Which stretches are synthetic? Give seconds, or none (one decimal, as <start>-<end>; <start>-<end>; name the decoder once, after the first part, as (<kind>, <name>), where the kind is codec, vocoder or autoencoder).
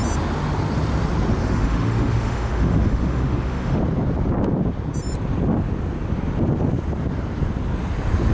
1.4-3.8 (autoencoder, DAC-VAE)